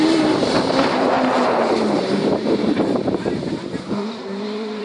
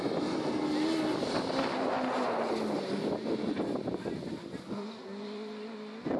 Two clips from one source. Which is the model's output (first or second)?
first